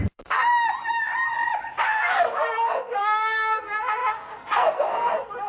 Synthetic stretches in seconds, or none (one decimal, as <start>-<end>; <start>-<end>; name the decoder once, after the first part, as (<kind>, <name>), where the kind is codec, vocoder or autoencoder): 0.0-0.4 (codec, SNAC); 1.8-5.5